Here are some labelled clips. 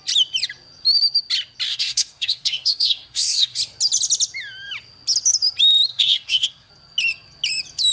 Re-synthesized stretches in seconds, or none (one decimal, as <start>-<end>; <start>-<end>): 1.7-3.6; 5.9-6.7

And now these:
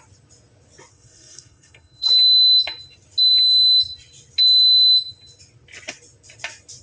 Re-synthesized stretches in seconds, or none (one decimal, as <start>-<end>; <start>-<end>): 0.9-2.1

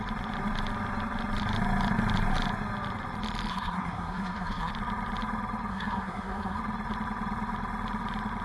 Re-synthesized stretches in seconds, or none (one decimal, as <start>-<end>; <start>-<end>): 3.5-4.7; 5.7-6.6

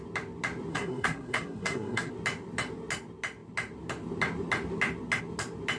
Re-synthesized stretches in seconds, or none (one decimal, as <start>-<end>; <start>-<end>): 0.7-2.1